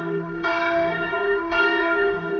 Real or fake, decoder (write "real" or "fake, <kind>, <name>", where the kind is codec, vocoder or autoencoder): fake, autoencoder, DAC-VAE